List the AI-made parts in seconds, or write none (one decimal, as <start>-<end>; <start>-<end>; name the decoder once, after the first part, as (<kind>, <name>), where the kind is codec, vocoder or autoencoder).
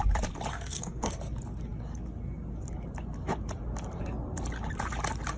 0.5-1.2 (codec, SNAC)